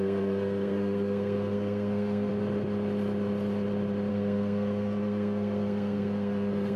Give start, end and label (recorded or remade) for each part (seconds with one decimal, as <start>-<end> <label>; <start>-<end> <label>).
0.0-2.3 remade; 2.3-4.1 recorded; 4.1-6.8 remade